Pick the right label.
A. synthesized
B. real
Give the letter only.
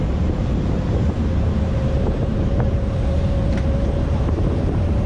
A